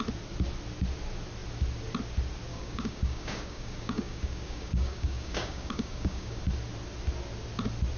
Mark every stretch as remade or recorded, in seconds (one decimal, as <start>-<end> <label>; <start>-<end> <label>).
0.0-2.5 recorded; 2.5-6.4 remade; 6.4-8.0 recorded